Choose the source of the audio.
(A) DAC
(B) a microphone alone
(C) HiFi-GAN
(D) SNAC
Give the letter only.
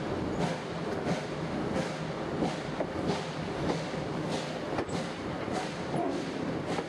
B